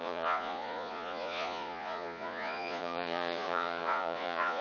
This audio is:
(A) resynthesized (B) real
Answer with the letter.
A